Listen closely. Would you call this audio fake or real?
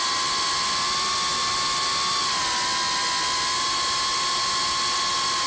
real